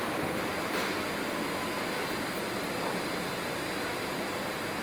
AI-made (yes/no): no